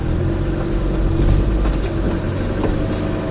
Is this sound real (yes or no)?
yes